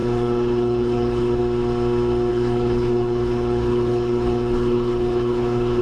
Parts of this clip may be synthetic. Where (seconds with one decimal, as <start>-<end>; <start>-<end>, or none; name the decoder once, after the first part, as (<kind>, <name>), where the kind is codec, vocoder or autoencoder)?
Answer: 0.0-1.4 (codec, HILCodec); 2.3-5.8